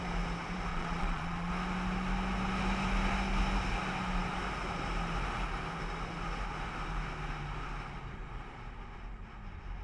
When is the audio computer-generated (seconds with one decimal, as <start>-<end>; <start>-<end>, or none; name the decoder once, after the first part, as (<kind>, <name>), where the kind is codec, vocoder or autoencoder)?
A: 0.7-1.5 (vocoder, Vocos)